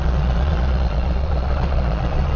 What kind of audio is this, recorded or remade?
remade